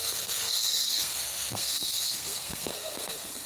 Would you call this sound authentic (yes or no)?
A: no